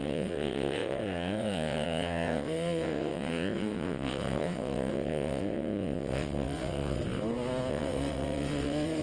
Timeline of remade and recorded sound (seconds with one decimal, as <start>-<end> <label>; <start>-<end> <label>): 0.0-7.0 remade; 7.0-7.7 recorded; 7.7-9.0 remade